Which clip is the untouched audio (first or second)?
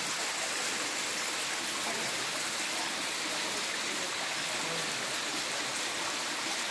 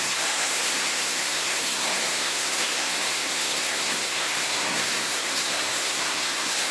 first